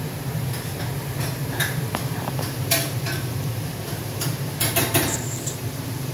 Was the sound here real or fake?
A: fake